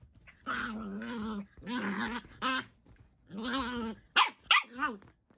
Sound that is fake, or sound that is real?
real